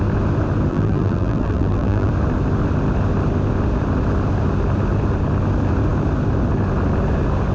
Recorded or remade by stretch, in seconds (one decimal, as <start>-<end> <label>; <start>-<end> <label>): 0.0-0.7 recorded; 0.7-2.1 remade; 2.1-7.5 recorded

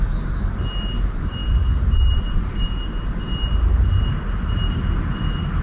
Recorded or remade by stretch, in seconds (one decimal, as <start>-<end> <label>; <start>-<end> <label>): 0.0-5.6 recorded

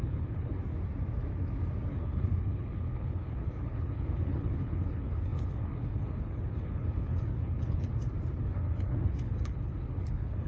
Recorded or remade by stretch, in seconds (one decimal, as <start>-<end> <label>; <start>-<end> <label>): 0.0-0.6 remade; 0.6-1.9 recorded; 1.9-7.9 remade; 7.9-8.4 recorded; 8.4-10.5 remade

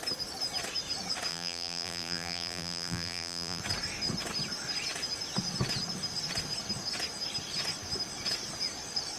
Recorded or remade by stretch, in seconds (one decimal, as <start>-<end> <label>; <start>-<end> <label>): 0.0-1.3 recorded; 1.3-3.6 remade; 3.6-9.2 recorded

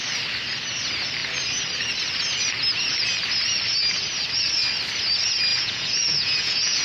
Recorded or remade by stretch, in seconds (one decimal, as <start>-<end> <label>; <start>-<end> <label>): 0.0-5.5 recorded; 5.5-6.8 remade

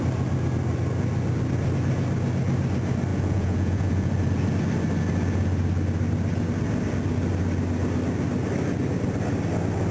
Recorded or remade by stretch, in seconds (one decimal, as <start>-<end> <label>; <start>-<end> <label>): 0.0-3.1 recorded; 3.1-4.1 remade; 4.1-9.9 recorded